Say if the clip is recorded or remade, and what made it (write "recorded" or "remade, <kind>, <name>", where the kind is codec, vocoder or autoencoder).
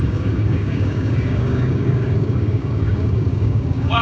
remade, codec, DAC